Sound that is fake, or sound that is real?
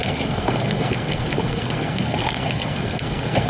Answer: fake